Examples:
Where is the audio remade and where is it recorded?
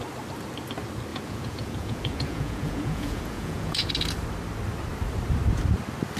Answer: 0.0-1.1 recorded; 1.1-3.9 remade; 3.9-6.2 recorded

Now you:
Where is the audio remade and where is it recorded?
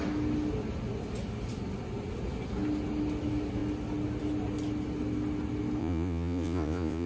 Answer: 0.0-5.8 recorded; 5.8-7.1 remade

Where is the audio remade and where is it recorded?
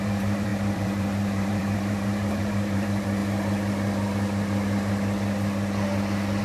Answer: 0.0-3.2 remade; 3.2-6.4 recorded